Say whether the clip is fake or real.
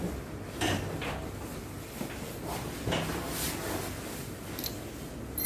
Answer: real